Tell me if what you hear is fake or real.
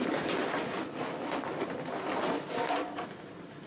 real